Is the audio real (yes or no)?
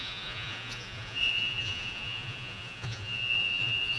no